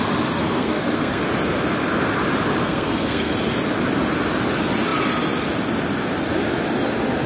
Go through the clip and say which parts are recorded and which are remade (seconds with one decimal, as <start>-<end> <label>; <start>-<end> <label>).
0.0-0.4 recorded; 0.4-1.2 remade; 1.2-2.6 recorded; 2.6-3.3 remade; 3.3-7.3 recorded